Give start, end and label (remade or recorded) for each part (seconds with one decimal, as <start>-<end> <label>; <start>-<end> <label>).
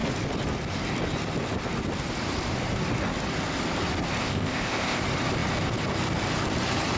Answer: 0.0-4.2 recorded; 4.2-5.0 remade; 5.0-7.0 recorded